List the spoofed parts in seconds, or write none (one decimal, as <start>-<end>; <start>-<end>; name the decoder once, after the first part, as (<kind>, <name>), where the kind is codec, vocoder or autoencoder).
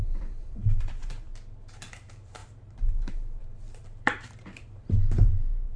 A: 0.0-1.3 (vocoder, BigVGAN v2); 1.9-5.8